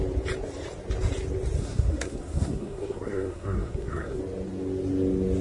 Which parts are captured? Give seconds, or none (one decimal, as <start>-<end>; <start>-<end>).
0.0-1.6; 4.2-5.4